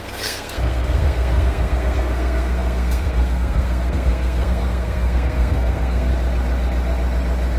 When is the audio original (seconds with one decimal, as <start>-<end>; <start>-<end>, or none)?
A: 6.1-7.6